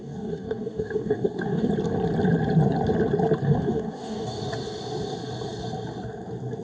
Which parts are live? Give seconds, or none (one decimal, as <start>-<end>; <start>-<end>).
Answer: 1.7-3.4; 4.4-6.6